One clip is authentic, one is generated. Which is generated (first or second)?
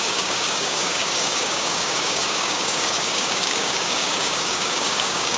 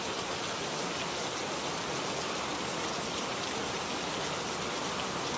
first